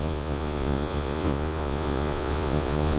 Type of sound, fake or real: fake